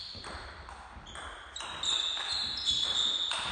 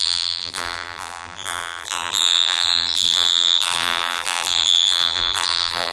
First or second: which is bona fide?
first